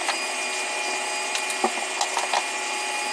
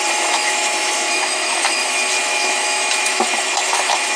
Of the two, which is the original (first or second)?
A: first